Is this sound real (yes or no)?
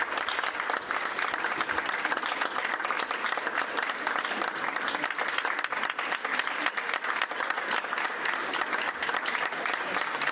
yes